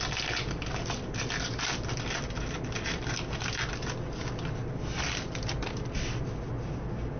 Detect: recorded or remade recorded